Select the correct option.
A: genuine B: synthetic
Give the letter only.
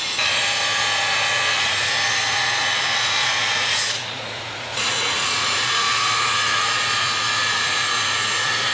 B